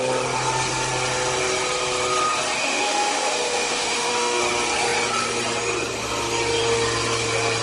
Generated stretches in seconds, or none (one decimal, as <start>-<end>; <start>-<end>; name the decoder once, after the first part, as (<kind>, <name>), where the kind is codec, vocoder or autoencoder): 2.6-4.4 (autoencoder, DAC-VAE)